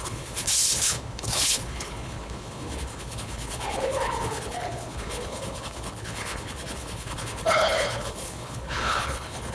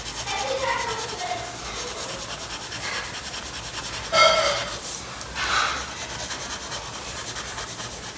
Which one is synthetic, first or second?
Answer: first